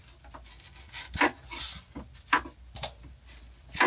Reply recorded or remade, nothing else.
recorded